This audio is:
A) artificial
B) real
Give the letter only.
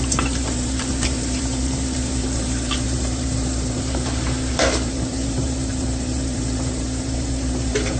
A